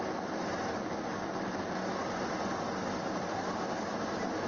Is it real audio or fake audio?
real